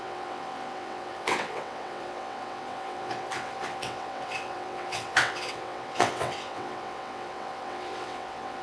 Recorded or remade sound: remade